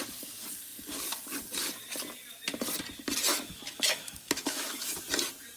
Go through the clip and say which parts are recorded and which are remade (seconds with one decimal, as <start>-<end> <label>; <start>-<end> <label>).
0.0-3.3 recorded; 3.3-5.0 remade; 5.0-5.6 recorded